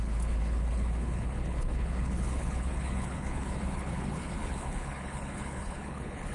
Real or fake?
fake